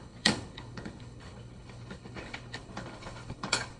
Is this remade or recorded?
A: remade